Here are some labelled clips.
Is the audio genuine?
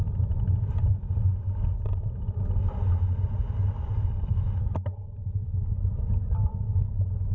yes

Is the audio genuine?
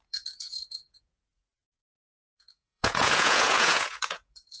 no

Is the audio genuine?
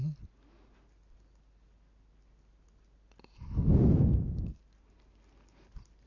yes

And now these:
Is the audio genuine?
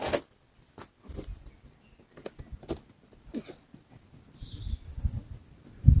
yes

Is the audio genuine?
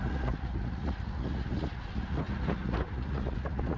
no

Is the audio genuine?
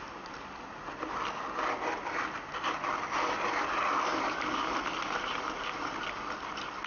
yes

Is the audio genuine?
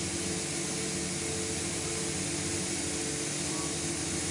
yes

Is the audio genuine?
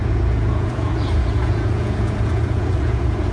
no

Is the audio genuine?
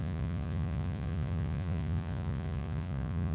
no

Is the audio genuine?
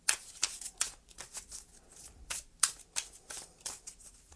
yes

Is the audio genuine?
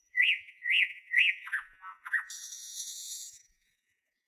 no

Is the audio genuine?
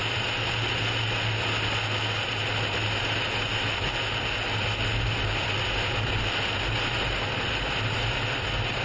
yes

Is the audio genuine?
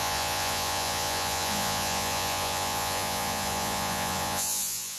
no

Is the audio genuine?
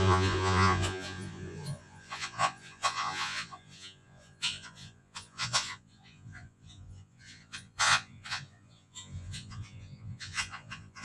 no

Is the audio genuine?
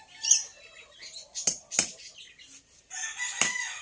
yes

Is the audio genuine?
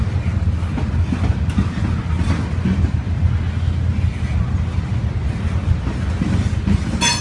yes